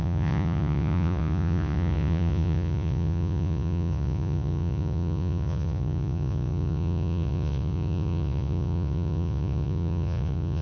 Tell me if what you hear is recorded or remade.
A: remade